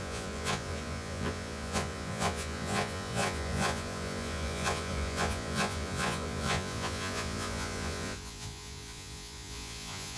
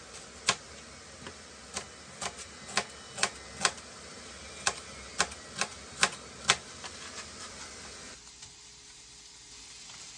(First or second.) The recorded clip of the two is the second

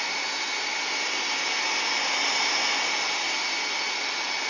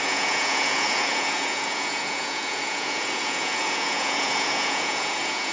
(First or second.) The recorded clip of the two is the first